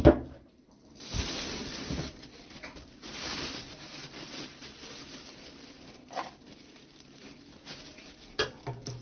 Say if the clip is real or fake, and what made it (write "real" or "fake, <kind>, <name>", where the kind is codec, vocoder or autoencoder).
fake, vocoder, BigVGAN v2